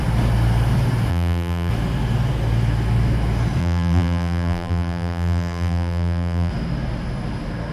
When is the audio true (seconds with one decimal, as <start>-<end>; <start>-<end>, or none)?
0.0-1.1; 1.7-3.6; 6.5-7.7

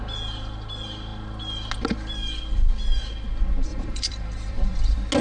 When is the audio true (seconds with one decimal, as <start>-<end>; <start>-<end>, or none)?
0.0-3.7; 4.8-5.2

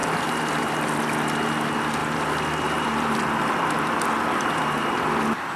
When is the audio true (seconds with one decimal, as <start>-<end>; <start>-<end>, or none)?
1.0-2.0

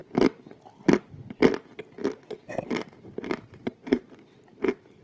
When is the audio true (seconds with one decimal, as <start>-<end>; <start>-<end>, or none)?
0.0-3.0

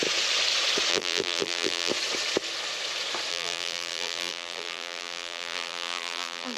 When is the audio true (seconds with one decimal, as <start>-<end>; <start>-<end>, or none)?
0.0-0.9; 1.9-3.3

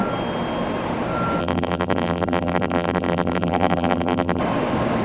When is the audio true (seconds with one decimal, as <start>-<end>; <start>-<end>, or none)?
0.0-1.4; 4.4-5.0

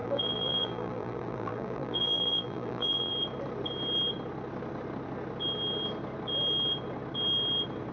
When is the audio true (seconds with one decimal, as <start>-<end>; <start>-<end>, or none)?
3.1-7.9

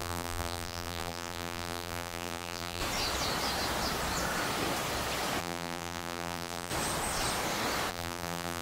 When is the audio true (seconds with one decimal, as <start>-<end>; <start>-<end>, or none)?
2.8-5.4; 6.7-7.9